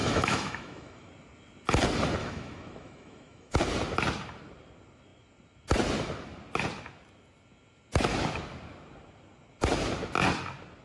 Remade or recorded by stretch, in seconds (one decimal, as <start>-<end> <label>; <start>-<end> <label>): 0.0-1.1 remade; 1.1-2.2 recorded; 2.2-3.6 remade; 3.6-10.8 recorded